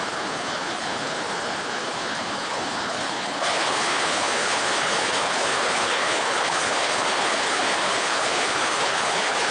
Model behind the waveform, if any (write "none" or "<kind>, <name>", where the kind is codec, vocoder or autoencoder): codec, HILCodec